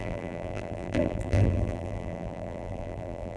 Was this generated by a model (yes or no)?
yes